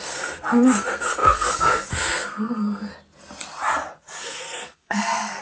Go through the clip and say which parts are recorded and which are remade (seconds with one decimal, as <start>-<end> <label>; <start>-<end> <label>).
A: 0.0-2.9 remade; 2.9-4.2 recorded; 4.2-5.4 remade